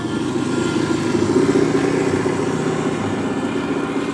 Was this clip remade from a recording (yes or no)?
no